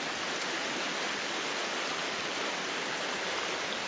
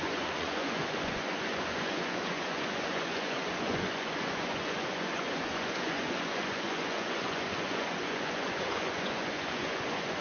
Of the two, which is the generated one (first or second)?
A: second